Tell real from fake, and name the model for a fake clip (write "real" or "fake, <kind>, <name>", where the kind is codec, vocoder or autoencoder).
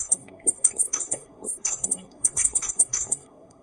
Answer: fake, codec, SNAC